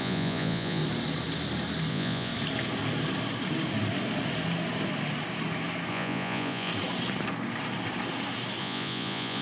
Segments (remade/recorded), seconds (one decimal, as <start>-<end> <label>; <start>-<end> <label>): 0.0-0.8 remade; 0.8-1.9 recorded; 1.9-2.3 remade; 2.3-5.9 recorded; 5.9-6.7 remade; 6.7-8.6 recorded; 8.6-9.4 remade

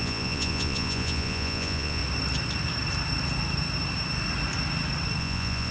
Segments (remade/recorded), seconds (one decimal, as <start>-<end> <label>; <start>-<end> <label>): 0.0-2.0 remade; 2.0-5.2 recorded; 5.2-5.7 remade

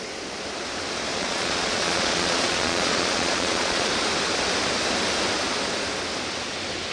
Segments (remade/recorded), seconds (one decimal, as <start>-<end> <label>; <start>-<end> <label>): 0.0-1.1 recorded; 1.1-3.9 remade; 3.9-6.9 recorded

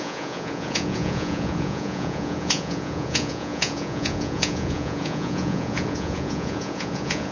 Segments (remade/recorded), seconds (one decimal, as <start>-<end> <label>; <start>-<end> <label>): 0.0-7.3 remade

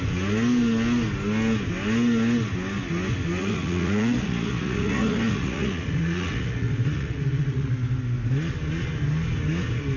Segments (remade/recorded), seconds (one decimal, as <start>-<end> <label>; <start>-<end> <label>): 0.0-3.4 recorded; 3.4-7.7 remade; 7.7-10.0 recorded

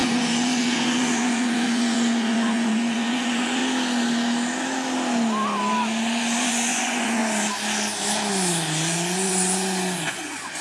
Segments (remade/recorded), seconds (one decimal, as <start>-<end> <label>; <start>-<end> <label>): 0.0-3.6 remade; 3.6-6.4 recorded; 6.4-7.2 remade; 7.2-9.3 recorded; 9.3-10.6 remade

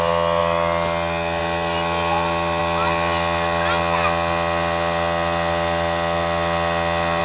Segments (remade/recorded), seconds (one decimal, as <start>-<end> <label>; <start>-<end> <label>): 0.0-7.2 recorded

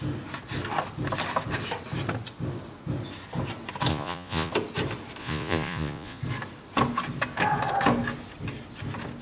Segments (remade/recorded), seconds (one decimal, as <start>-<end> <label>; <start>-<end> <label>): 0.0-3.9 recorded; 3.9-4.5 remade; 4.5-5.2 recorded; 5.2-6.2 remade; 6.2-9.2 recorded